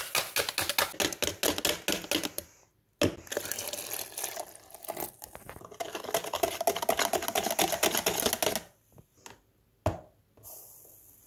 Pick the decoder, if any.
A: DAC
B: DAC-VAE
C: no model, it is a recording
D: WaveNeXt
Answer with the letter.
C